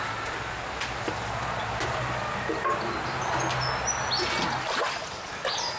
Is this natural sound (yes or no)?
yes